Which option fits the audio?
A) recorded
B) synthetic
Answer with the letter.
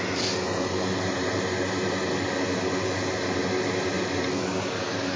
A